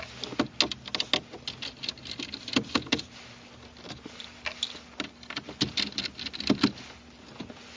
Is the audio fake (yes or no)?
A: no